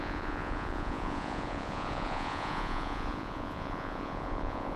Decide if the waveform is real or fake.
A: fake